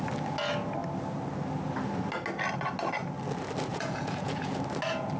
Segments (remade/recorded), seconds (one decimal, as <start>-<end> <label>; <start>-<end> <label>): 0.0-3.7 recorded; 3.7-4.6 remade; 4.6-5.2 recorded